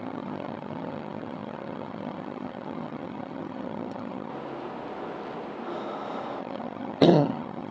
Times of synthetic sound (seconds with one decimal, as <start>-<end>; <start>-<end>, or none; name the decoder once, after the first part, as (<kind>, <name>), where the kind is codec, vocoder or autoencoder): 0.0-4.3 (vocoder, HiFi-GAN); 6.4-7.7